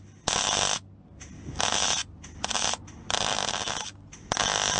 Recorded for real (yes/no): yes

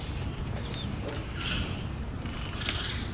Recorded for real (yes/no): yes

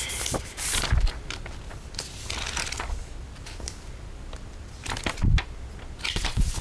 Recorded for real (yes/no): yes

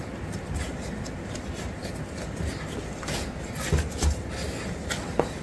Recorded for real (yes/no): yes